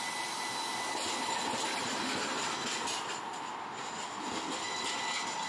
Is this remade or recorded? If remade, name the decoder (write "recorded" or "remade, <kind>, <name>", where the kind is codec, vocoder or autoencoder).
recorded